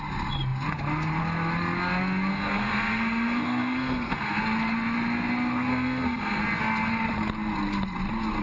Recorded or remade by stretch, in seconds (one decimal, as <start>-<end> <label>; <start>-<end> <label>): 0.0-2.3 recorded; 2.3-4.4 remade; 4.4-5.7 recorded; 5.7-6.4 remade; 6.4-8.4 recorded